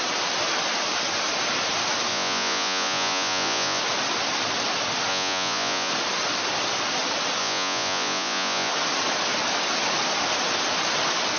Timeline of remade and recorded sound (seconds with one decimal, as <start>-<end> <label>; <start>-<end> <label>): 0.0-2.1 recorded; 2.1-3.8 remade; 3.8-5.1 recorded; 5.1-5.9 remade; 5.9-7.4 recorded; 7.4-8.7 remade; 8.7-11.4 recorded